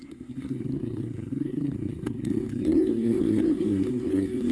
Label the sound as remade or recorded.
remade